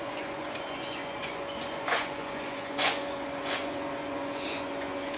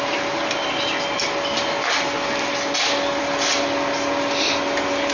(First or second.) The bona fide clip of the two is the second